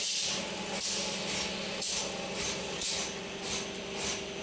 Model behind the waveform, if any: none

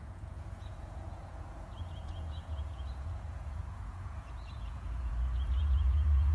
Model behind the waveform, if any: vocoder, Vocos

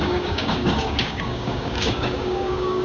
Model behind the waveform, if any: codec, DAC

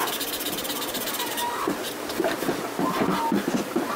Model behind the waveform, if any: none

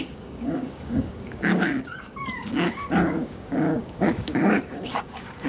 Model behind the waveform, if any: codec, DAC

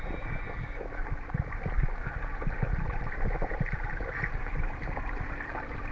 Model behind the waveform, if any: vocoder, BigVGAN v2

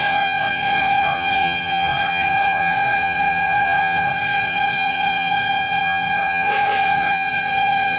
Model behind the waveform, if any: vocoder, WaveNeXt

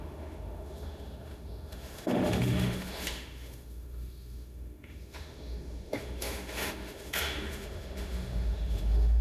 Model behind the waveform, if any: autoencoder, DAC-VAE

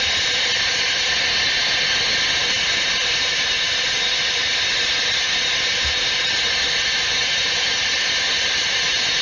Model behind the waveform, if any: none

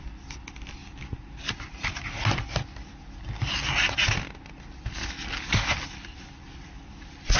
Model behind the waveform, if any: none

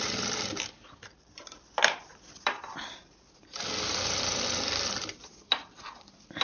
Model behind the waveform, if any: vocoder, BigVGAN v2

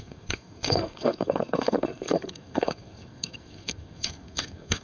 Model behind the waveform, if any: codec, SNAC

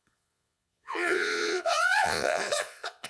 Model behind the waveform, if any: vocoder, Vocos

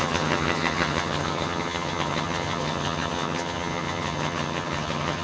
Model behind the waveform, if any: vocoder, HiFi-GAN